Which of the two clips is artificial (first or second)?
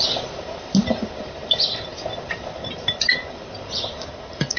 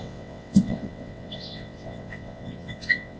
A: second